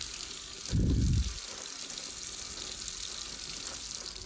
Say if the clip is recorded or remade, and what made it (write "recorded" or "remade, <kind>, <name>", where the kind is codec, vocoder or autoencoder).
recorded